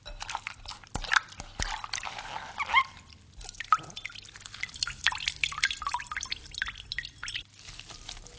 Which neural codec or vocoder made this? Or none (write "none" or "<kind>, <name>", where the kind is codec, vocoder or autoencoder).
none